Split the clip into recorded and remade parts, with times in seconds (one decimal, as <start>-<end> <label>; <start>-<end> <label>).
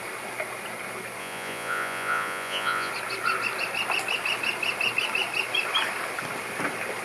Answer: 0.0-1.2 recorded; 1.2-2.9 remade; 2.9-7.0 recorded